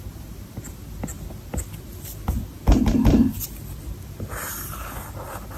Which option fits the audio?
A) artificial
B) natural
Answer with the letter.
B